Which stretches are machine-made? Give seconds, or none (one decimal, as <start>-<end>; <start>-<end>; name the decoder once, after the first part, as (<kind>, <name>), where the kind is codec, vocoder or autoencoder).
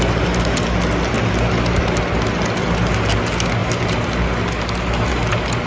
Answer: none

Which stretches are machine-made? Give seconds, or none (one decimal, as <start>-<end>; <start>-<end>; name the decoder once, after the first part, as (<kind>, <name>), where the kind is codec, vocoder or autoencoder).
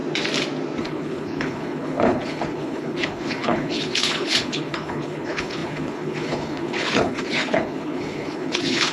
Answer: 0.8-8.9 (codec, HILCodec)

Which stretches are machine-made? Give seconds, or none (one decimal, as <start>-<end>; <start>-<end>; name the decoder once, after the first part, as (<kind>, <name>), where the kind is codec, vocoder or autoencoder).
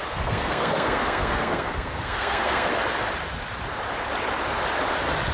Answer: 0.0-2.7 (codec, SNAC)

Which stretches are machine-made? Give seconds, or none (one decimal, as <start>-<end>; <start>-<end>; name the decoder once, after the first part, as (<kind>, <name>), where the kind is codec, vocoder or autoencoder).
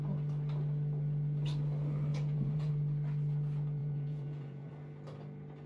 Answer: 2.1-2.7 (vocoder, Vocos); 3.8-4.7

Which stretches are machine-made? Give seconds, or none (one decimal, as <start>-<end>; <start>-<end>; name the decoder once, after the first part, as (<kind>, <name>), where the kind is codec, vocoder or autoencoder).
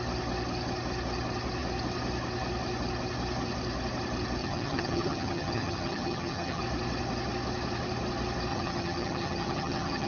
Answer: 4.4-6.6 (vocoder, HiFi-GAN); 8.5-10.1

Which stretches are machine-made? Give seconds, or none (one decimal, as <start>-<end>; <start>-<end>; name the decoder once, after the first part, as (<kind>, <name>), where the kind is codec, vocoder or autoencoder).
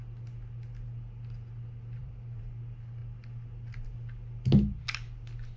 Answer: 2.0-2.6 (vocoder, BigVGAN v2)